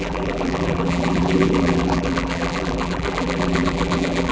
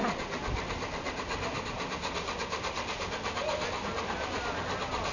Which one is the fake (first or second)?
first